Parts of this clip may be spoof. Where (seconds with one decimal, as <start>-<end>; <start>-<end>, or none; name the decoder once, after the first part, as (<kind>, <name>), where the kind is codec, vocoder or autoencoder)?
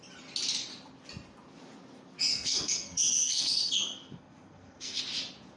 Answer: 2.3-5.0 (codec, SNAC)